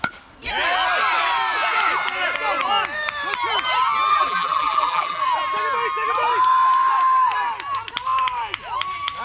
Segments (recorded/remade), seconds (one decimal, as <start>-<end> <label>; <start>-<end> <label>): 0.0-4.1 recorded; 4.1-5.2 remade; 5.2-9.2 recorded